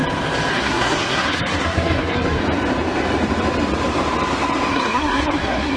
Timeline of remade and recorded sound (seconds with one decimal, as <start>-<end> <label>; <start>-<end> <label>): 0.0-0.5 recorded; 0.5-2.4 remade; 2.4-4.7 recorded; 4.7-5.8 remade